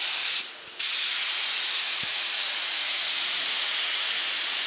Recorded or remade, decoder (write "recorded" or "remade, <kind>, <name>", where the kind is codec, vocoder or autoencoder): remade, vocoder, Vocos